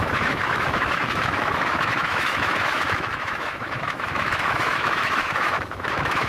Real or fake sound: fake